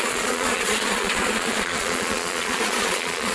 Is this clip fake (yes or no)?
yes